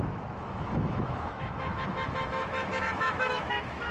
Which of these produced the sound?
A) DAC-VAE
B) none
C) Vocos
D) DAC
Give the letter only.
A